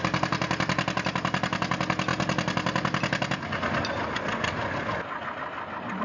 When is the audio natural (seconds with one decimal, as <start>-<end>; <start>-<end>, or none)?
0.0-6.0